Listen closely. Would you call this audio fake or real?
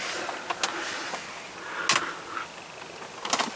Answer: real